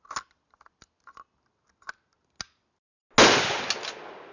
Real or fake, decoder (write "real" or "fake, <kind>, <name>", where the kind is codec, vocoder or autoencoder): real